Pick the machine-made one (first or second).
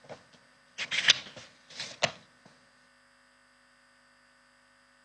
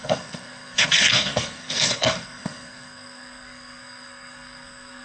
second